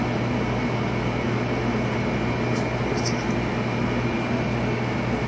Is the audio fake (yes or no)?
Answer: no